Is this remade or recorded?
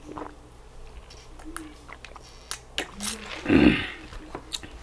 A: recorded